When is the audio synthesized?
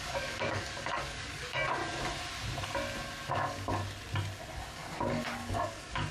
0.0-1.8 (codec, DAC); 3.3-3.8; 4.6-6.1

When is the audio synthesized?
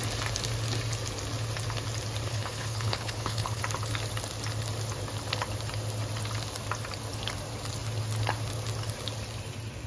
2.3-3.6 (codec, HILCodec)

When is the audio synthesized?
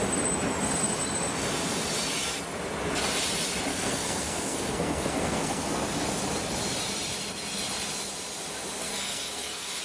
3.7-5.7 (codec, SNAC); 8.8-9.8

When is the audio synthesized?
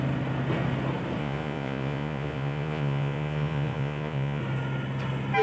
1.2-4.4 (vocoder, Vocos)